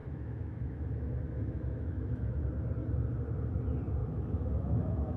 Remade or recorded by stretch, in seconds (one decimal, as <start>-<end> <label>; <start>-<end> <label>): 0.0-2.3 remade; 2.3-4.0 recorded; 4.0-5.2 remade